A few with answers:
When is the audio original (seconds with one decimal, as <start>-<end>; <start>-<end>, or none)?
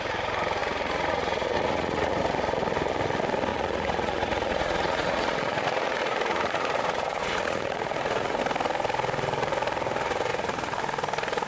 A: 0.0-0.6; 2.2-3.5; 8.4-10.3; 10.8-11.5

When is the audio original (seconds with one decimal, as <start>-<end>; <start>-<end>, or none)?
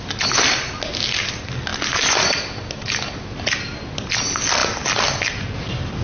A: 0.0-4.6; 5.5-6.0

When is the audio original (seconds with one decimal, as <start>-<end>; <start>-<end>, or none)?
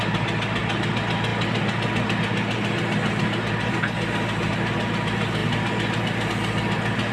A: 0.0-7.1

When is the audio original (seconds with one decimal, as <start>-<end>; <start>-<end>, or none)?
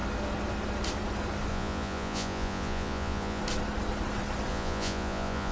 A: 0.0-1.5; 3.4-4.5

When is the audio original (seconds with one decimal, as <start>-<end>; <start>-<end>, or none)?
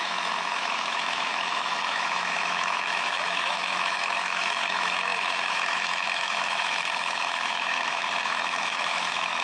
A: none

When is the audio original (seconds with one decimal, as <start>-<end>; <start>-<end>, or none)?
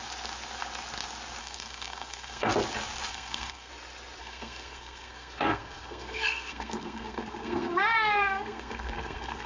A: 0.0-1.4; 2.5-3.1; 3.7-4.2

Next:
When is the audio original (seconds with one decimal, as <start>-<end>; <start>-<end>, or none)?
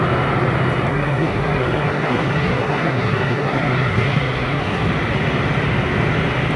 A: 0.0-0.9; 4.9-6.6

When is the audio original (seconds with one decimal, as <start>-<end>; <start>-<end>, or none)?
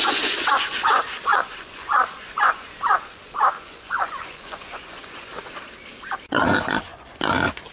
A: 5.3-6.3